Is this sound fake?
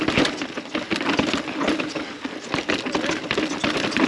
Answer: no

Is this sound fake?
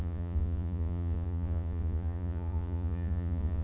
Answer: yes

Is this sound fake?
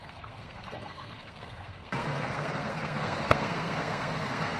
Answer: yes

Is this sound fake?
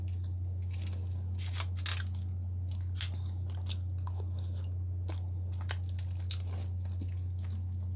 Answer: no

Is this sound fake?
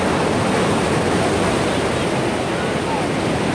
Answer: no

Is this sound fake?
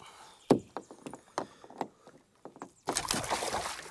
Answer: no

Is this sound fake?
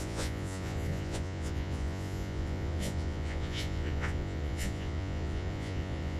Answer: yes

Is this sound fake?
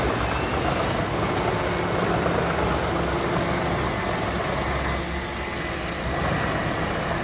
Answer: no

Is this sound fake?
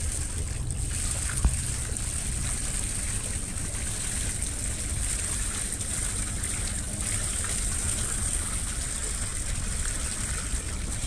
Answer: no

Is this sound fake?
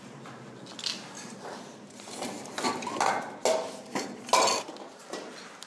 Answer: no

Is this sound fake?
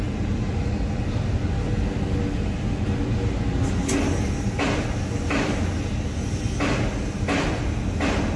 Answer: no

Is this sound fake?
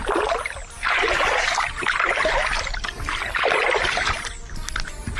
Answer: no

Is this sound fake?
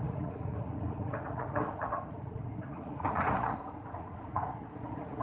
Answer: yes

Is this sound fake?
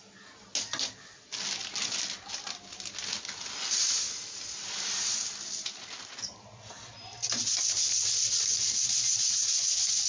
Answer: no